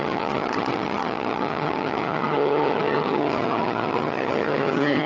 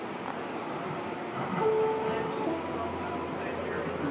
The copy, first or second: first